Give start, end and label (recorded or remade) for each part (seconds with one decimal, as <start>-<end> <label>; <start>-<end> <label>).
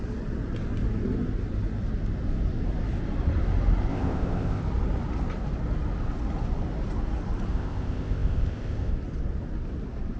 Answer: 0.0-3.9 recorded; 3.9-4.6 remade; 4.6-7.5 recorded; 7.5-8.9 remade; 8.9-10.2 recorded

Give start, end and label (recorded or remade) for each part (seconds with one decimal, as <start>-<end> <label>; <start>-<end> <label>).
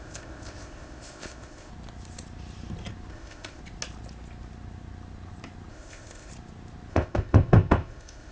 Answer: 0.0-1.7 remade; 1.7-3.1 recorded; 3.1-3.6 remade; 3.6-5.7 recorded; 5.7-6.3 remade; 6.3-6.9 recorded; 6.9-8.3 remade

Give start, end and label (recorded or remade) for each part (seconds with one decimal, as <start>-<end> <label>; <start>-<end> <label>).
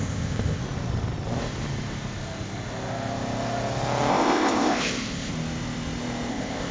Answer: 0.0-0.6 remade; 0.6-4.1 recorded; 4.1-5.3 remade; 5.3-6.3 recorded; 6.3-6.7 remade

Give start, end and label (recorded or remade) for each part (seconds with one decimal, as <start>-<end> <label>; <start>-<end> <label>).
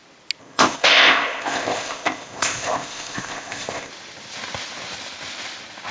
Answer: 0.0-0.4 recorded; 0.4-3.9 remade; 3.9-5.9 recorded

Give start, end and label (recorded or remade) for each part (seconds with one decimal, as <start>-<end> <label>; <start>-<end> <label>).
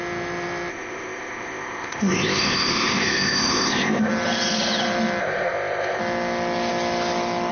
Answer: 0.0-0.7 recorded; 0.7-4.1 remade; 4.1-5.2 recorded; 5.2-6.0 remade; 6.0-7.5 recorded